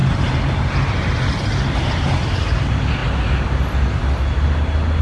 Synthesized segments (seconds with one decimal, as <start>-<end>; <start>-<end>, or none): none

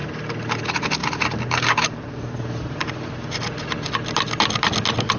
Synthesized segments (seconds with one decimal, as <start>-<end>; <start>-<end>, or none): 1.0-3.1

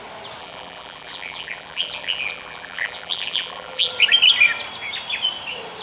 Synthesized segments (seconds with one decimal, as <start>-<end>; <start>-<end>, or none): 0.4-3.9

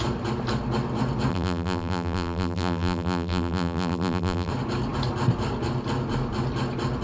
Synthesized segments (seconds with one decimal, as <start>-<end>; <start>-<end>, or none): 1.3-4.5

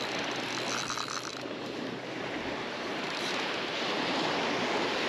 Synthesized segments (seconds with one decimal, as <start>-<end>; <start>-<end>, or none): 1.3-3.9

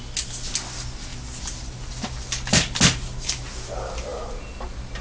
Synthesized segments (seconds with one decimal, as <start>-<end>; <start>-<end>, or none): none